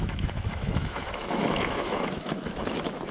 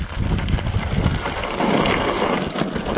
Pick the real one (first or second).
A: second